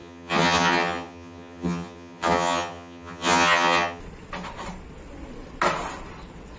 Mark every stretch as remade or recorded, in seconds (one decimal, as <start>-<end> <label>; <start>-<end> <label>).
0.0-4.0 remade; 4.0-6.6 recorded